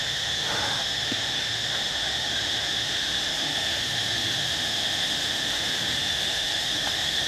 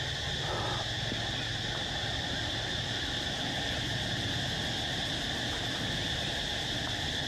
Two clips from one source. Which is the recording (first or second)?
second